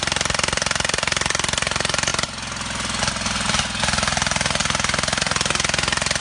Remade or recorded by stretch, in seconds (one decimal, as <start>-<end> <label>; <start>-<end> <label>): 0.0-6.2 recorded